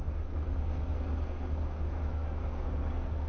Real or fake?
fake